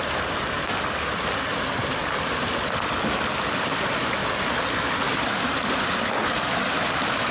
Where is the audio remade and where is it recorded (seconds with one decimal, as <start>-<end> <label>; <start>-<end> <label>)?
0.0-7.3 recorded